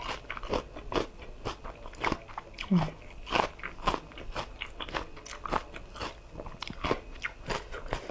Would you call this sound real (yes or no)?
yes